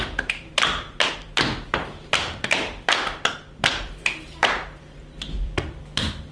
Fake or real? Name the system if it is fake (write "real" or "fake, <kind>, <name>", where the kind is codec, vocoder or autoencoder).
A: fake, vocoder, BigVGAN v2